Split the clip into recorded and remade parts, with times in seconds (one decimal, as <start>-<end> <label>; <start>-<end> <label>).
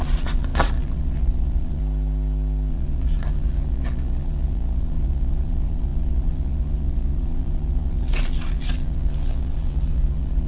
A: 0.0-1.8 remade; 1.8-2.7 recorded; 2.7-10.5 remade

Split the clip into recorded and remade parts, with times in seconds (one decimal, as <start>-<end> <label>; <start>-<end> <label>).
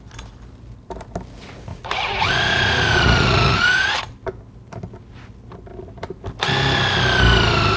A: 0.0-1.7 recorded; 1.7-4.1 remade; 4.1-7.8 recorded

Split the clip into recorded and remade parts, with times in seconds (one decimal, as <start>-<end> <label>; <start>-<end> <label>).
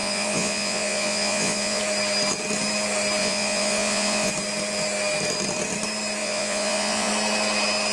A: 0.0-1.8 remade; 1.8-3.2 recorded; 3.2-4.3 remade; 4.3-6.2 recorded; 6.2-7.1 remade; 7.1-7.9 recorded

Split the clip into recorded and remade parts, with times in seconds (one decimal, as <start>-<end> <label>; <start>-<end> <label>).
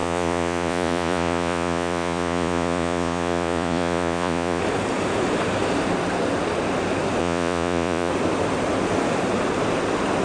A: 0.0-4.6 remade; 4.6-7.2 recorded; 7.2-8.1 remade; 8.1-10.2 recorded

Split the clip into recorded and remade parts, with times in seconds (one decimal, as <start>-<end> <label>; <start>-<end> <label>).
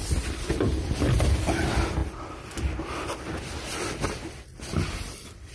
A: 0.0-5.5 recorded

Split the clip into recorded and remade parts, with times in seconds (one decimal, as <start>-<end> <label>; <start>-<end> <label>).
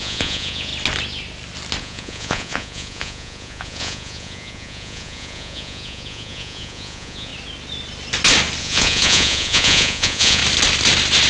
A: 0.0-0.7 remade; 0.7-1.8 recorded; 1.8-7.3 remade; 7.3-8.6 recorded; 8.6-10.4 remade; 10.4-11.3 recorded